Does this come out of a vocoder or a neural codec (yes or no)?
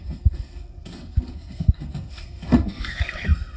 yes